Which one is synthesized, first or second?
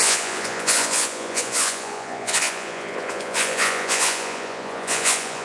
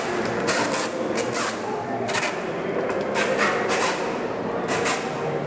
first